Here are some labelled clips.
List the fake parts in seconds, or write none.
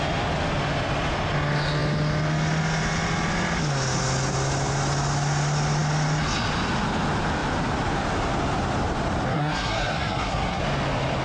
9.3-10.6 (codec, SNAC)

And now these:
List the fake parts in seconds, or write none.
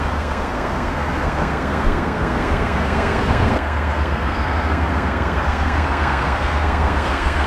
0.0-7.5 (codec, SNAC)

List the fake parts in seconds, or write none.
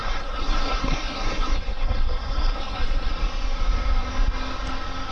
0.0-3.1 (codec, SNAC)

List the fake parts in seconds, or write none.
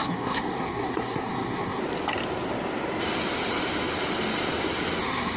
0.0-1.8 (codec, SNAC); 5.0-5.4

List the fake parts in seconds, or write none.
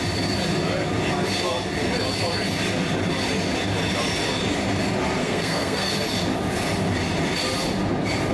5.2-5.9 (codec, SNAC)